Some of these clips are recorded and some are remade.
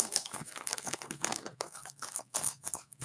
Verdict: remade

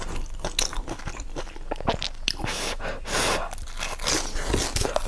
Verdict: recorded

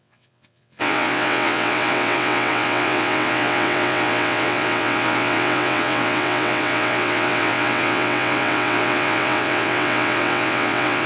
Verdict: remade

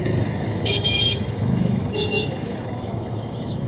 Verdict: remade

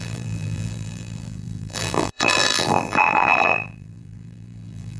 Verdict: remade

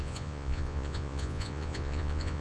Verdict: remade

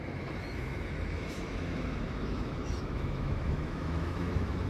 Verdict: remade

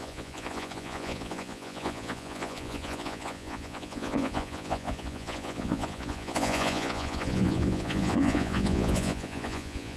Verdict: remade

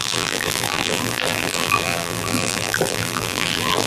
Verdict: remade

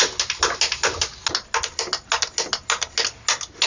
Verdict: recorded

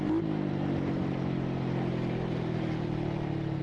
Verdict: recorded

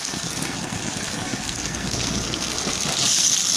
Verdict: remade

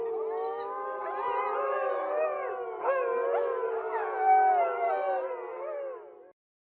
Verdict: recorded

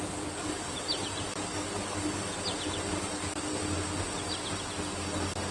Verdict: recorded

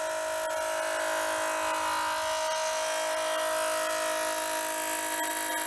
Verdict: recorded